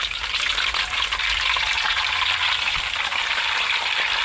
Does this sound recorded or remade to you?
recorded